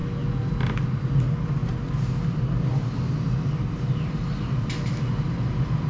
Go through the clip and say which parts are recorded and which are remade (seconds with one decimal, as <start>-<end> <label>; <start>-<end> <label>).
0.0-5.9 recorded